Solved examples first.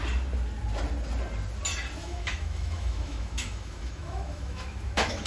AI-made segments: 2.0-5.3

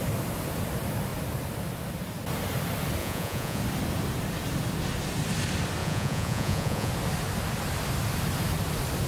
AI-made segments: 3.0-3.6; 5.8-6.9